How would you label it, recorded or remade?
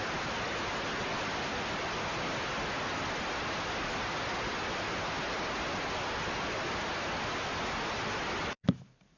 recorded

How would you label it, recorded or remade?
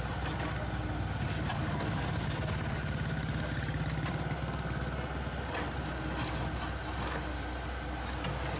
recorded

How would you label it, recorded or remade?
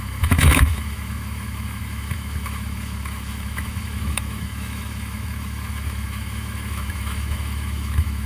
remade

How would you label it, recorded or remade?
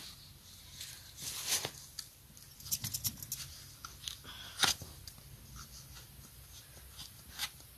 recorded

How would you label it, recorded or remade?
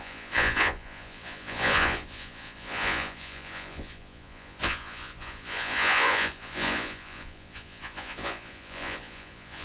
remade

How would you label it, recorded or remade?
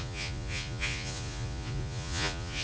remade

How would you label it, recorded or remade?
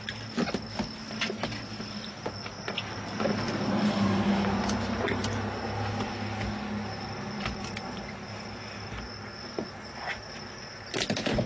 recorded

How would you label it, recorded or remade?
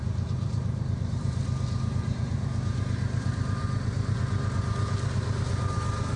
remade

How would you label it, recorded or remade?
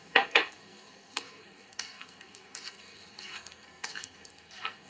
remade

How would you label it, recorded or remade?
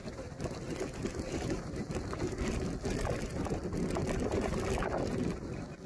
recorded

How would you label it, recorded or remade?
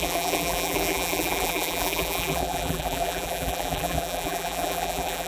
remade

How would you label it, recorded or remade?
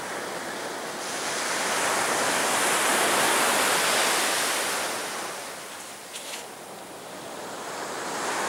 recorded